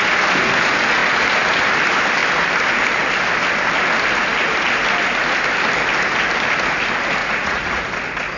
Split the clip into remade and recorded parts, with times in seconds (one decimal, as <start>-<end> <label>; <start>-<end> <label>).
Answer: 0.0-7.2 recorded; 7.2-7.8 remade; 7.8-8.4 recorded